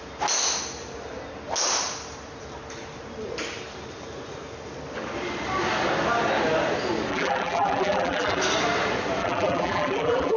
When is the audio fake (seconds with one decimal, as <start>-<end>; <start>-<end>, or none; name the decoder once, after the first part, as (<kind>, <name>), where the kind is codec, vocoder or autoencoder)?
7.1-8.4 (vocoder, BigVGAN v2); 9.2-10.4